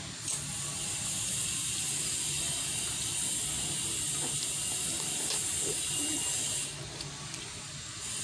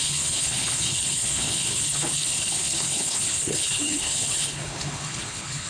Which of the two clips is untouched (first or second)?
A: first